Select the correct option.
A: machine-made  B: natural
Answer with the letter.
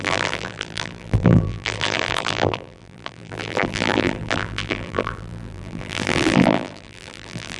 A